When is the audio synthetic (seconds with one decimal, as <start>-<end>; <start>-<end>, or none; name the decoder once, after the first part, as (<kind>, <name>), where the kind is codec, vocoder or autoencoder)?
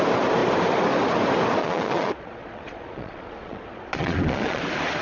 1.6-4.6 (vocoder, Vocos)